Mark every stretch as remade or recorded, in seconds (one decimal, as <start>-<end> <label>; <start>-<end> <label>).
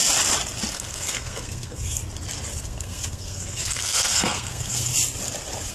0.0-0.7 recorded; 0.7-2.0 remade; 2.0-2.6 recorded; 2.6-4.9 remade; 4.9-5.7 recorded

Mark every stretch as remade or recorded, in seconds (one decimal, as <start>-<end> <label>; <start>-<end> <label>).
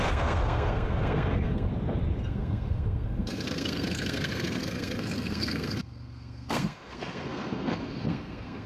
0.0-1.7 remade; 1.7-2.2 recorded; 2.2-8.7 remade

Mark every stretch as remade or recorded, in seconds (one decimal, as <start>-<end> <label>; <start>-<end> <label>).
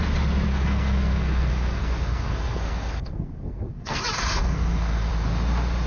0.0-0.5 recorded; 0.5-4.0 remade; 4.0-4.4 recorded; 4.4-5.1 remade; 5.1-5.9 recorded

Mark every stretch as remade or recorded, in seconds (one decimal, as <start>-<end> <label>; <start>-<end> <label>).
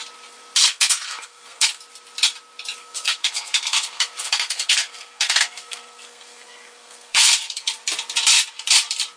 0.0-0.6 recorded; 0.6-1.8 remade; 1.8-2.8 recorded; 2.8-7.7 remade; 7.7-9.2 recorded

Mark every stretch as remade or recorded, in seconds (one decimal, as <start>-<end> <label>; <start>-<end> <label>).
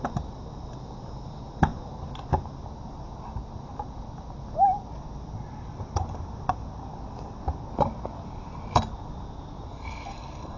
0.0-9.8 recorded; 9.8-10.6 remade